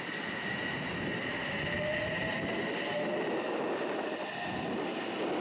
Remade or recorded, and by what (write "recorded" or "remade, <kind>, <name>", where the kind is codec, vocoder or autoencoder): recorded